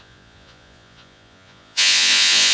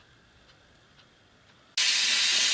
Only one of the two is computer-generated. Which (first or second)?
first